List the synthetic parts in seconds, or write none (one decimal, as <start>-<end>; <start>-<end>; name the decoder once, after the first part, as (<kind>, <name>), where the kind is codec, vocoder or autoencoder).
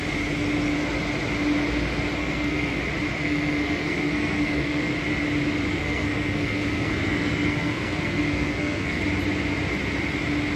2.2-2.8 (codec, SNAC); 3.2-4.9; 5.7-9.0